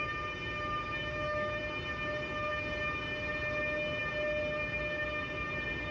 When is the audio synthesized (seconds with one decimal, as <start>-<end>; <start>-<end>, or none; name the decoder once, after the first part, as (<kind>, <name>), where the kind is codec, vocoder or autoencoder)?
1.0-1.6 (autoencoder, DAC-VAE)